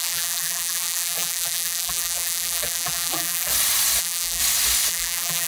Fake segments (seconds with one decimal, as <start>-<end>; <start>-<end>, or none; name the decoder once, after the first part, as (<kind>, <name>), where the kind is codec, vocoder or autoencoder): 0.0-3.5 (vocoder, BigVGAN v2); 4.0-4.4; 4.9-5.5